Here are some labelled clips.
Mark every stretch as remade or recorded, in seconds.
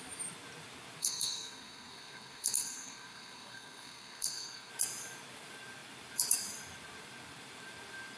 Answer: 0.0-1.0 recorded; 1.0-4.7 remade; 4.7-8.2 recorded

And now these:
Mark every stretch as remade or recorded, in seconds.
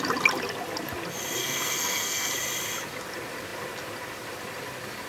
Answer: 0.0-1.4 recorded; 1.4-2.3 remade; 2.3-5.1 recorded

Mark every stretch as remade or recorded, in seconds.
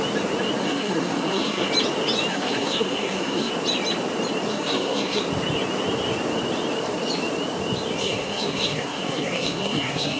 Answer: 0.0-0.6 recorded; 0.6-1.7 remade; 1.7-2.3 recorded; 2.3-3.5 remade; 3.5-4.5 recorded; 4.5-5.2 remade; 5.2-8.0 recorded; 8.0-10.2 remade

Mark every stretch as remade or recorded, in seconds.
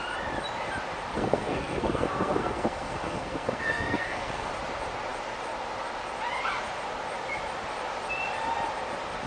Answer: 0.0-1.1 recorded; 1.1-4.5 remade; 4.5-9.3 recorded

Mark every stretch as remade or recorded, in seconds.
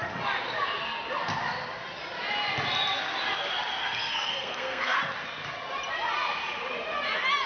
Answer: 0.0-3.8 recorded; 3.8-5.0 remade; 5.0-7.5 recorded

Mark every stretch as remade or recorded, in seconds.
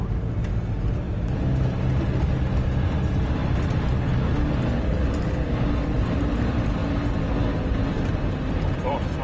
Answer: 0.0-9.2 recorded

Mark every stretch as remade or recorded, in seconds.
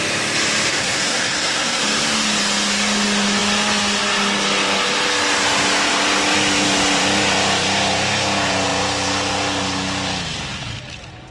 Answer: 0.0-0.7 recorded; 0.7-1.8 remade; 1.8-11.3 recorded